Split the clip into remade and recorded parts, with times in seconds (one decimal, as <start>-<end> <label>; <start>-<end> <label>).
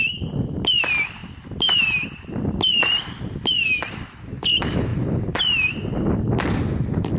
0.0-7.2 recorded